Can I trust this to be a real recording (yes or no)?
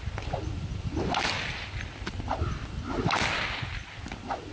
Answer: yes